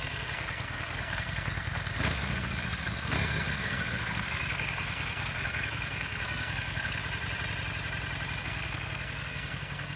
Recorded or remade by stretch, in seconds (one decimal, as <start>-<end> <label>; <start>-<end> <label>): 0.0-7.0 remade; 7.0-8.4 recorded; 8.4-10.0 remade